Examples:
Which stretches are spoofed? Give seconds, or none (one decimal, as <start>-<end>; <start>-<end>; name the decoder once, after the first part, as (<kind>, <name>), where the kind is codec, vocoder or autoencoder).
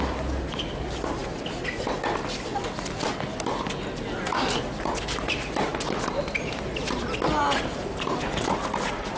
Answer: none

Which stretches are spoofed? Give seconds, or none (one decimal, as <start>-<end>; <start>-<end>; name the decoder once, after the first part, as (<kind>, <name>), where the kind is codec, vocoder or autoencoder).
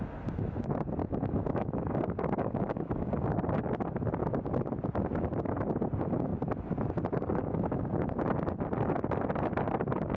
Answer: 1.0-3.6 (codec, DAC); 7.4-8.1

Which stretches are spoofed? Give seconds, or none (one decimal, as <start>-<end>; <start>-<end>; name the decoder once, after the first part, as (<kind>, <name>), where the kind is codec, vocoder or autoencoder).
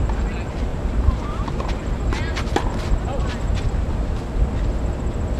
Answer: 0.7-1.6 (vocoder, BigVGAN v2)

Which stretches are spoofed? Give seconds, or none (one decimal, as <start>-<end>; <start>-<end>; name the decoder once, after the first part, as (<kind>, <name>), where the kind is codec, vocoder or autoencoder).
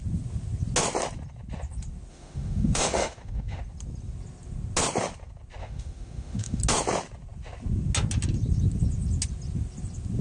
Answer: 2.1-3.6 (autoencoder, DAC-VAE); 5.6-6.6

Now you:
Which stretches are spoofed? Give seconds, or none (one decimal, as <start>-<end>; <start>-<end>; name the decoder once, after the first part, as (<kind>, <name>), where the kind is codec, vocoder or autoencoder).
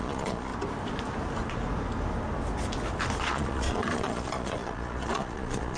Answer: 0.0-0.5 (vocoder, Vocos); 3.2-5.8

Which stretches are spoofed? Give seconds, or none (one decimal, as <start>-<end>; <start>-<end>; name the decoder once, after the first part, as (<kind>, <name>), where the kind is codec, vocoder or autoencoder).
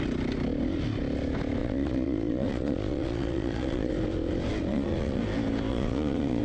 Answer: 1.6-3.9 (vocoder, Vocos); 4.7-5.2; 5.7-6.4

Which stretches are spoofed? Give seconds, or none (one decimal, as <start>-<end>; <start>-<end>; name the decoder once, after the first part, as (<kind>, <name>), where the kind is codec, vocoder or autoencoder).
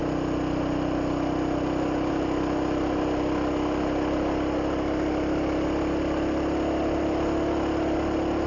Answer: none